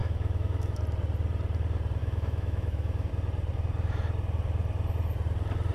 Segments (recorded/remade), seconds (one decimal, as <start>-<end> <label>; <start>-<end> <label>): 0.0-0.8 remade; 0.8-2.0 recorded; 2.0-3.1 remade; 3.1-5.7 recorded